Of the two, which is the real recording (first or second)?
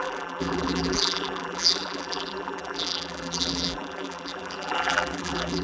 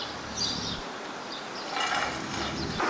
second